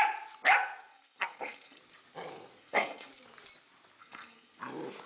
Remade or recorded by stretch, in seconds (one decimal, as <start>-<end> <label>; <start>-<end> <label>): 0.0-0.9 recorded; 0.9-1.8 remade; 1.8-2.6 recorded; 2.6-3.1 remade; 3.1-4.0 recorded; 4.0-4.6 remade; 4.6-5.1 recorded